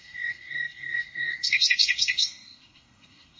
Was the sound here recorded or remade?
remade